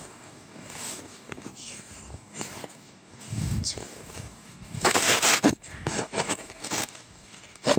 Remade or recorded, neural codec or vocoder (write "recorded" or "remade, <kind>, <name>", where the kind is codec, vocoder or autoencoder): remade, codec, DAC